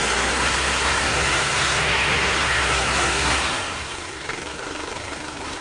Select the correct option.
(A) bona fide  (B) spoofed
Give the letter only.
B